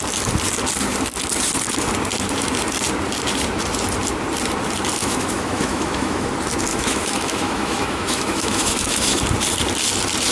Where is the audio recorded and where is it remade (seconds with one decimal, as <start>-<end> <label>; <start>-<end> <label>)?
0.0-5.0 recorded; 5.0-6.3 remade; 6.3-6.7 recorded; 6.7-9.2 remade; 9.2-10.3 recorded